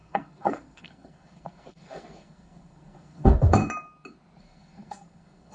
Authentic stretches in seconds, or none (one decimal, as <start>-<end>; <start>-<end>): 3.6-4.4